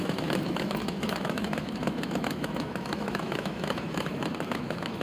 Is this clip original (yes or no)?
no